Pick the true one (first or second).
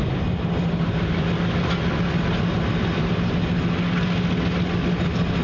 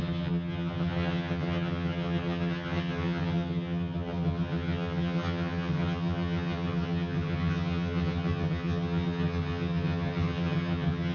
first